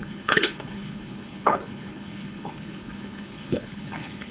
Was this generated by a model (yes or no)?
yes